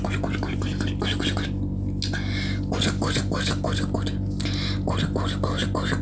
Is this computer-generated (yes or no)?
no